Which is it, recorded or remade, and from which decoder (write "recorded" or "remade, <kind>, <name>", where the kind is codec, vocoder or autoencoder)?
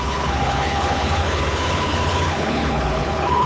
remade, codec, HILCodec